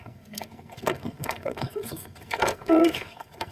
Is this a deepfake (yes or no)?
yes